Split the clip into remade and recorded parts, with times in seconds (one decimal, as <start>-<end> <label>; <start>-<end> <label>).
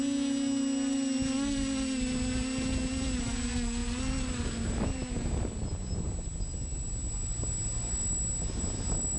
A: 0.0-9.2 recorded